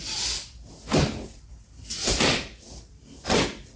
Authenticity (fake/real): fake